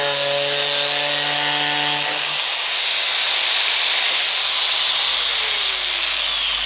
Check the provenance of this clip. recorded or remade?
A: recorded